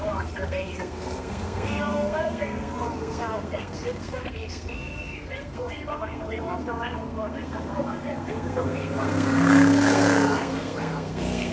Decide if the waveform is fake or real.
fake